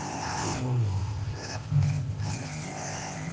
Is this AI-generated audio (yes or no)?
yes